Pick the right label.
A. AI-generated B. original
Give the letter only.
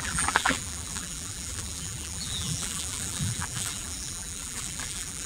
A